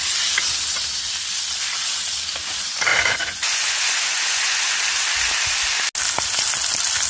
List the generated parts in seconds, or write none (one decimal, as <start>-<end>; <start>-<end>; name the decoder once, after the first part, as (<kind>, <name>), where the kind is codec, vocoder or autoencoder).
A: 2.9-4.7 (vocoder, Vocos)